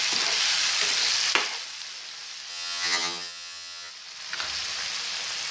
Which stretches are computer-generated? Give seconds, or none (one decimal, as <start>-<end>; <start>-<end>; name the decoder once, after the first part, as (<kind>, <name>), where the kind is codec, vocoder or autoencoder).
2.5-3.9 (vocoder, HiFi-GAN)